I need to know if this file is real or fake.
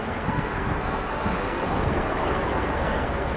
fake